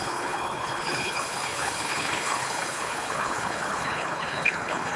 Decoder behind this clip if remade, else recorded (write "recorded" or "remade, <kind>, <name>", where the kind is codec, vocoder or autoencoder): remade, codec, HILCodec